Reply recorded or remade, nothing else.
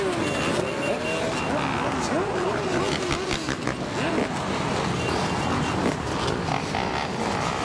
recorded